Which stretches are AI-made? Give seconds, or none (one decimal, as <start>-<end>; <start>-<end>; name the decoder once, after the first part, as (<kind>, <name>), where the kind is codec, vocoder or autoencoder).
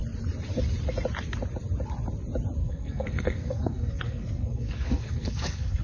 2.6-5.8 (codec, SNAC)